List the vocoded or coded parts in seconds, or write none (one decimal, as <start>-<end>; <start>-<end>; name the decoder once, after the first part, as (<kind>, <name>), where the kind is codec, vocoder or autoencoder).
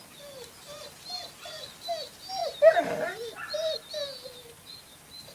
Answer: none